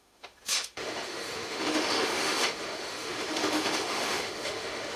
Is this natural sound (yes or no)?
no